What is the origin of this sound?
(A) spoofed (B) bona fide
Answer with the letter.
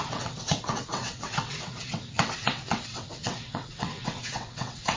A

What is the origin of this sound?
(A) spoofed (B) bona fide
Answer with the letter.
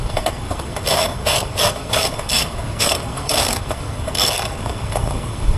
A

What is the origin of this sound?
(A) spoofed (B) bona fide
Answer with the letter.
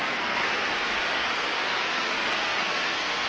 A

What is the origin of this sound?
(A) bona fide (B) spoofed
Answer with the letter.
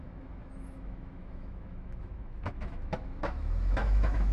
B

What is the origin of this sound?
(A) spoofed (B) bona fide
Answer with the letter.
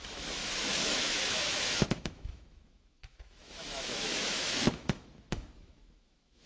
A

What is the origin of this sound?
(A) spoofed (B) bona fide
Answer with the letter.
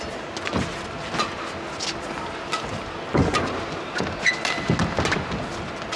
B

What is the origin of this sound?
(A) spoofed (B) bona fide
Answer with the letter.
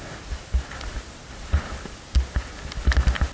B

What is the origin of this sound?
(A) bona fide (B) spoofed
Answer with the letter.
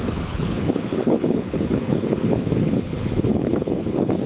B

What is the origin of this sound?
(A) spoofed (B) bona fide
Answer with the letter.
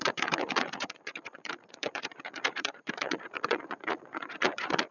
A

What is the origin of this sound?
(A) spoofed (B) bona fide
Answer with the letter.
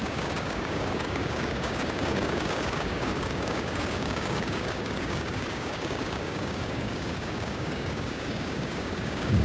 A